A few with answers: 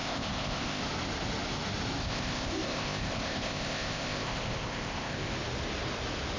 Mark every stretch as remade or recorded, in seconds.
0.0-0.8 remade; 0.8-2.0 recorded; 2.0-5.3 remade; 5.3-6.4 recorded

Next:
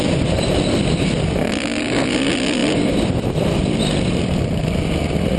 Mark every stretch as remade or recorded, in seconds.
0.0-5.4 recorded

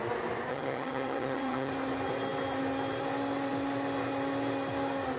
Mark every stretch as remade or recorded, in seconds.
0.0-0.5 recorded; 0.5-1.7 remade; 1.7-5.2 recorded

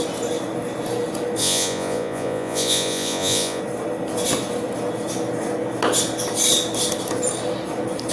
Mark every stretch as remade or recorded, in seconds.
0.0-1.4 recorded; 1.4-3.6 remade; 3.6-8.1 recorded

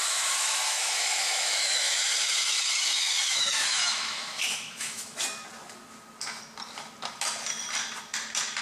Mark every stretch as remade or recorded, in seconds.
0.0-5.2 remade; 5.2-8.6 recorded

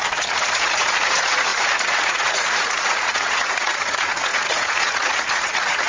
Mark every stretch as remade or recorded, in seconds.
0.0-5.9 remade

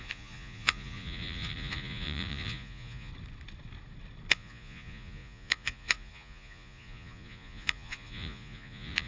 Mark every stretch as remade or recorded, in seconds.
0.0-3.1 remade; 3.1-4.3 recorded; 4.3-9.1 remade

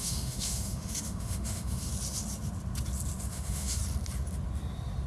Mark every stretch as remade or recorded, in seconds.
0.0-1.9 remade; 1.9-3.3 recorded; 3.3-3.8 remade; 3.8-5.1 recorded